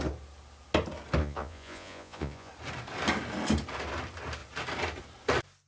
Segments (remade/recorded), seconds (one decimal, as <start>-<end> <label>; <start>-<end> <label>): 0.0-1.2 recorded; 1.2-2.5 remade; 2.5-5.7 recorded